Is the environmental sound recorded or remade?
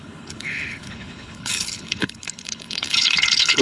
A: remade